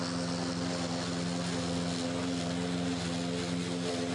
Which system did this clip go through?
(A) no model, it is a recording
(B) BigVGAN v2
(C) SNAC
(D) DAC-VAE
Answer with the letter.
A